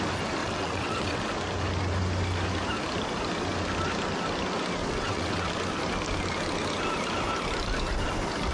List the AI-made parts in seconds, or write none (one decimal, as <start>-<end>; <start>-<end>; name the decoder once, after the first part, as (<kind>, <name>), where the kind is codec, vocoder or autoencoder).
0.4-1.2 (vocoder, WaveNeXt); 4.8-5.5